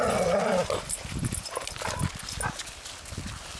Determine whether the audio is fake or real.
real